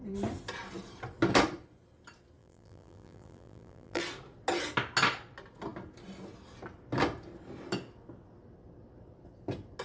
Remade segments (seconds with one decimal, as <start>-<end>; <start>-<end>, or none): 2.4-4.0